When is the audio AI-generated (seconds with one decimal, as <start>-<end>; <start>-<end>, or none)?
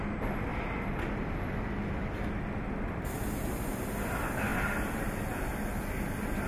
none